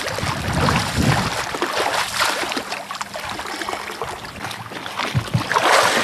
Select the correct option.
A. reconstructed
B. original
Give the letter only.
B